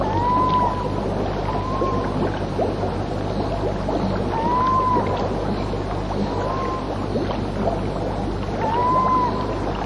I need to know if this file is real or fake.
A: real